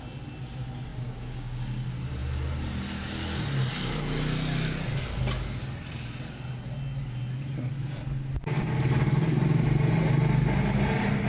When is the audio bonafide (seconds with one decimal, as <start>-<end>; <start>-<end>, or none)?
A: 0.0-0.9; 1.6-11.3